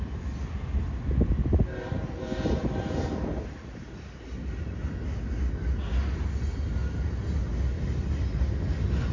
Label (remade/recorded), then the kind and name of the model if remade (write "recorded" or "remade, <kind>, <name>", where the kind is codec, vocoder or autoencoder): recorded